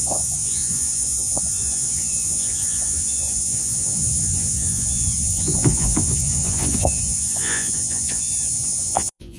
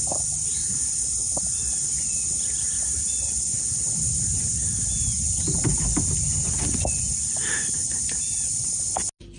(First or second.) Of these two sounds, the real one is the second